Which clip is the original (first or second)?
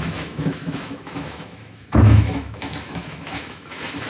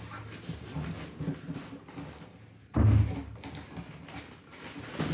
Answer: second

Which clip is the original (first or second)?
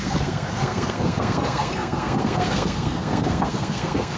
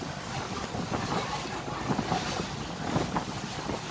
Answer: second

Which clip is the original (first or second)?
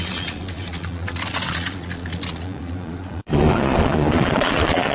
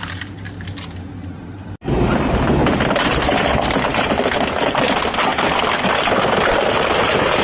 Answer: second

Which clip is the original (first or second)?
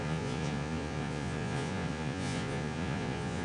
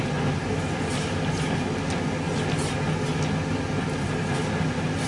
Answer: second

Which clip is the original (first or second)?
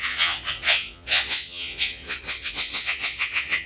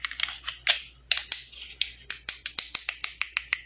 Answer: second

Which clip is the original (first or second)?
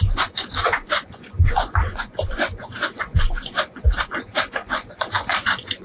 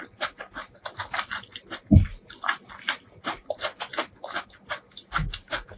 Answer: second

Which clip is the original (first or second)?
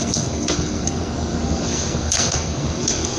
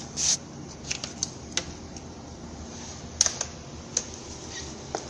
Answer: second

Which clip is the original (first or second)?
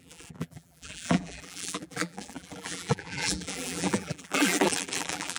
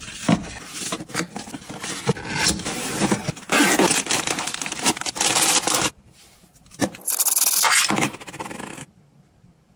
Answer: second